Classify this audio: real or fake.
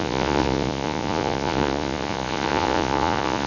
fake